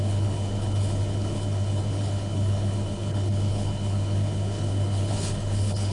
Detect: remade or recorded remade